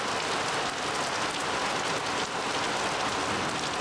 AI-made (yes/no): no